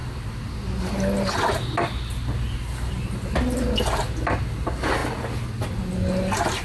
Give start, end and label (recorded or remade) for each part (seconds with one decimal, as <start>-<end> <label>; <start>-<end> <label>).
0.0-6.6 recorded